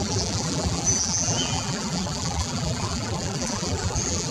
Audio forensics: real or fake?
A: fake